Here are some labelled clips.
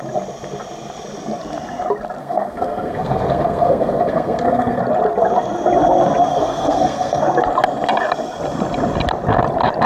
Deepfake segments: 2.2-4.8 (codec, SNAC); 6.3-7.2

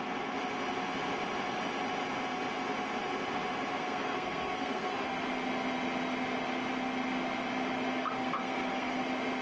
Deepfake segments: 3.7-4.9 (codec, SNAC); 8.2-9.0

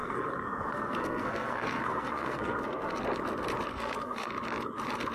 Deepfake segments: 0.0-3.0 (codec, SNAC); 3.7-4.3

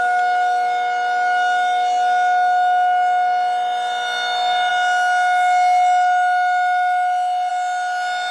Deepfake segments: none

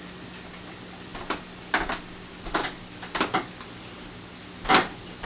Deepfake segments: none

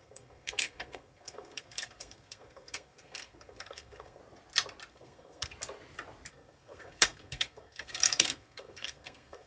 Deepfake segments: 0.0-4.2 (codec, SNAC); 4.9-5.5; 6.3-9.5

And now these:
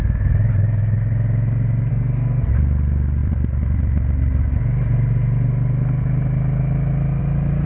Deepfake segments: 1.9-2.5 (codec, SNAC)

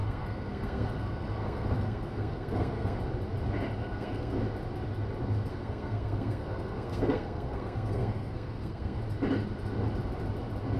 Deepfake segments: 0.0-3.0 (codec, SNAC); 3.8-4.4; 5.5-9.0